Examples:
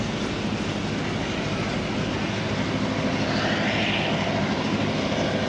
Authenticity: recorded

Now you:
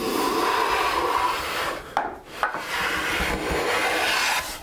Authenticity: recorded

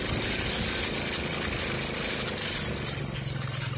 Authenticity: recorded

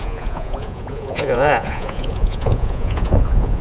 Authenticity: remade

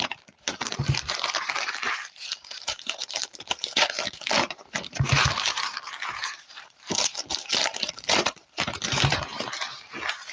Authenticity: remade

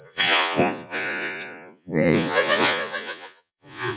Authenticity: remade